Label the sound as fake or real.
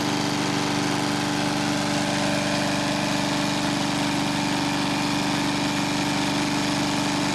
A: real